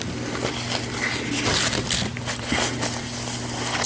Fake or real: real